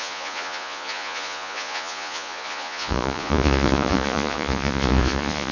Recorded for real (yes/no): no